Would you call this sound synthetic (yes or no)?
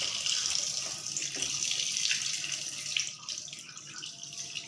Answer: no